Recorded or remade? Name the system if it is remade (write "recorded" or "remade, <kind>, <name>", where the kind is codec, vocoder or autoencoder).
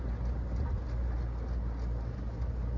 recorded